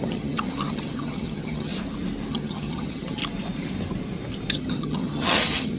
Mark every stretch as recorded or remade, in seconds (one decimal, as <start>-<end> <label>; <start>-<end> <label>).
0.0-1.7 remade; 1.7-2.3 recorded; 2.3-3.2 remade; 3.2-4.5 recorded; 4.5-5.8 remade